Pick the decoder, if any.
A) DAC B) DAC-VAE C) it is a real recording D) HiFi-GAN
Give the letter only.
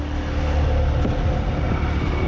C